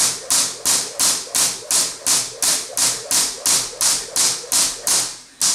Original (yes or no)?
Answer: yes